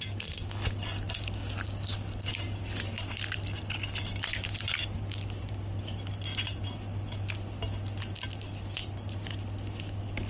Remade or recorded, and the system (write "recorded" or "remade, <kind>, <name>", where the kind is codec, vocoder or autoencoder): recorded